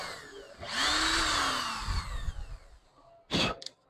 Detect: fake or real real